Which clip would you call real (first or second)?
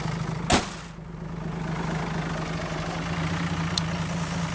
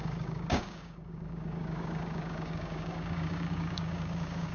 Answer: first